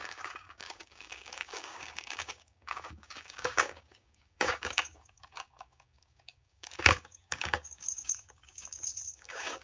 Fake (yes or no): yes